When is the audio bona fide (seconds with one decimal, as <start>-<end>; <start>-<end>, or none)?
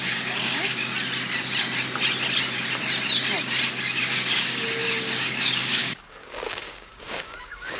0.9-3.8